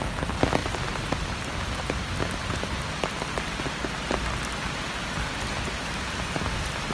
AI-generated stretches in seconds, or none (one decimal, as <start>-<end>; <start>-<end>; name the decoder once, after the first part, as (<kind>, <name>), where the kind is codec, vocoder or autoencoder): none